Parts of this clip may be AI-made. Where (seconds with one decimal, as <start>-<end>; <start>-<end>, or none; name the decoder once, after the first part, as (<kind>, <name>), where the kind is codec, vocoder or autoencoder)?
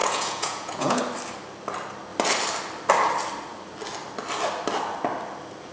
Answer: 0.0-1.0 (vocoder, Vocos)